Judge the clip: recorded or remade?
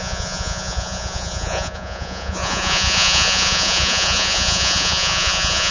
remade